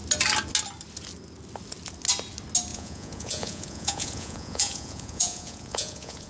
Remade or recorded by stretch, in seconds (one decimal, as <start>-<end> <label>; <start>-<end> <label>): 0.0-2.7 recorded; 2.7-6.3 remade